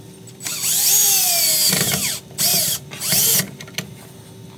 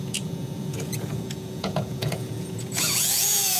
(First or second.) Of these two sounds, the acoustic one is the first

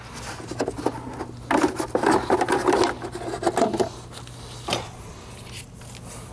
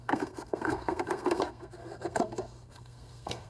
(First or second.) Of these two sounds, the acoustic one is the first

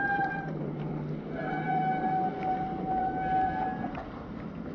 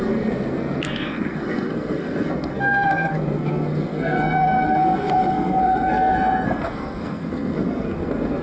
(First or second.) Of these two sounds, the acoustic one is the first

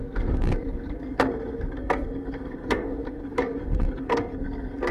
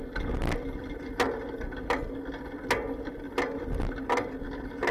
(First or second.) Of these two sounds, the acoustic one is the second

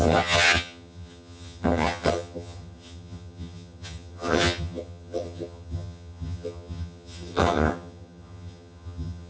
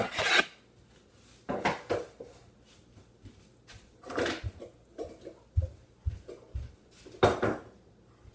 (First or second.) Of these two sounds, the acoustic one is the second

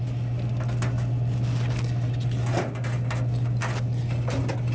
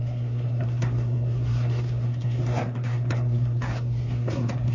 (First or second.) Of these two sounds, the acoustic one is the first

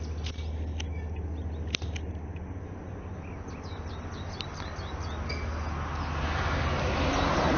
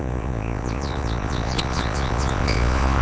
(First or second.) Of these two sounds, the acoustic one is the first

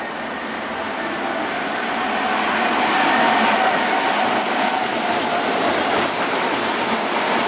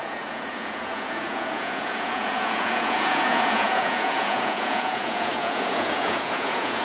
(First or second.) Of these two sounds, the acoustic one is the first